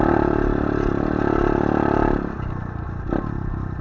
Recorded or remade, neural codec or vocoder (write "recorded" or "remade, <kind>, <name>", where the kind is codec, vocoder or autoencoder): recorded